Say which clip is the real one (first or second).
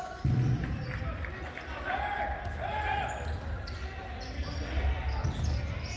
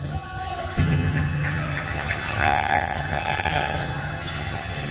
first